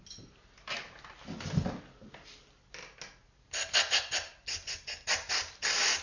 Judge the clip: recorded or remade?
recorded